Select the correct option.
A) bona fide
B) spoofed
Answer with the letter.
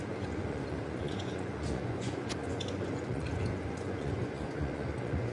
B